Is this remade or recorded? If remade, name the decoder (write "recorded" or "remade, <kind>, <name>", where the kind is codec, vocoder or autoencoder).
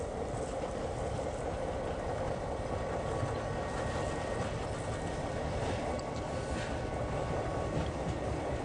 remade, vocoder, BigVGAN v2